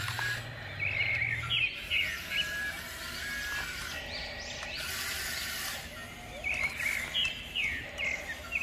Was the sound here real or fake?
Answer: real